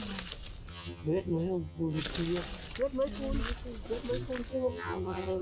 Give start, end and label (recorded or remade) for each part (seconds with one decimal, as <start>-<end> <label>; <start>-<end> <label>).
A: 0.0-0.7 recorded; 0.7-2.0 remade; 2.0-4.5 recorded; 4.5-5.4 remade